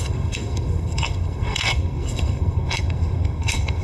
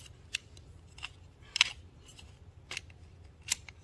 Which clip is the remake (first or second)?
first